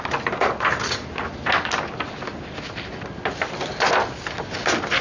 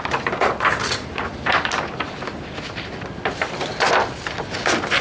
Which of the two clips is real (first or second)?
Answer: first